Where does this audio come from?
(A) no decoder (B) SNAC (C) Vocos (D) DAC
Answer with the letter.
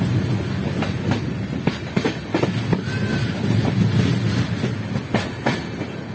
A